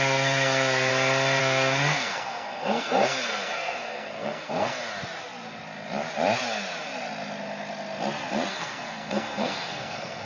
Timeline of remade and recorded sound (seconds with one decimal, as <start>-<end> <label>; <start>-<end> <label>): 0.0-0.9 remade; 0.9-1.4 recorded; 1.4-4.8 remade; 4.8-8.5 recorded; 8.5-10.3 remade